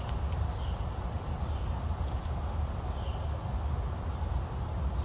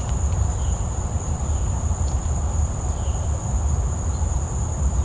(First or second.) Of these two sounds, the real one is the first